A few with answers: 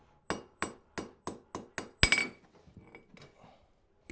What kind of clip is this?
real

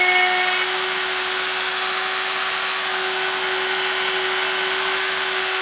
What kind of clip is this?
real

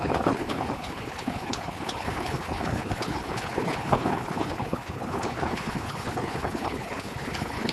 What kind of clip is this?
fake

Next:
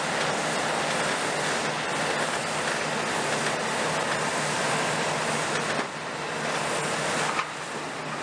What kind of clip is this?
real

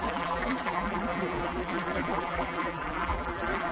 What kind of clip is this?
fake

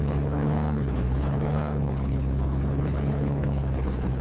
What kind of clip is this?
fake